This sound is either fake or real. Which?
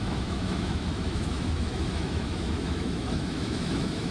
fake